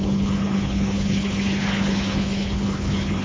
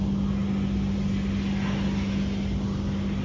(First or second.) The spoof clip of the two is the first